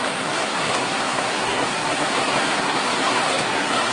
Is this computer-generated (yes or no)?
yes